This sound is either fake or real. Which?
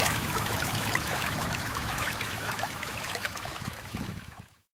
fake